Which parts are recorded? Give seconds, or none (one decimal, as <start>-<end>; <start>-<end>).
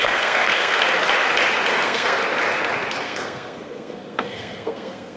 0.8-1.7; 2.2-3.0